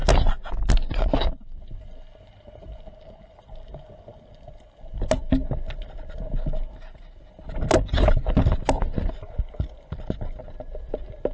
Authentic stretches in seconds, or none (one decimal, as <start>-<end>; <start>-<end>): 0.0-11.3